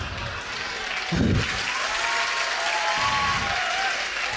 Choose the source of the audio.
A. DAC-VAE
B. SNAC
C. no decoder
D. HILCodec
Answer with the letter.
C